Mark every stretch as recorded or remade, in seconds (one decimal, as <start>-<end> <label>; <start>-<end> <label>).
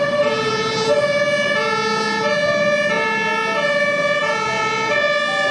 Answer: 0.0-5.5 recorded